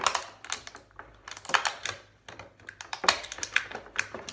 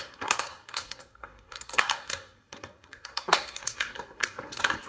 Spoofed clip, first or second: second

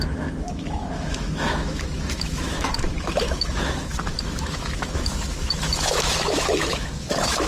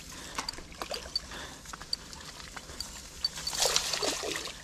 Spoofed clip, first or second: first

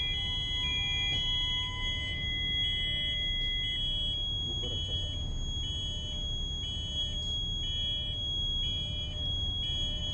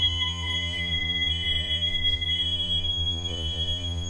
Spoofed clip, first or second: second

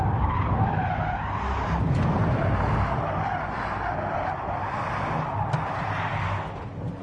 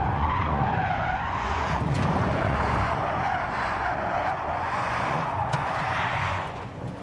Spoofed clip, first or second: second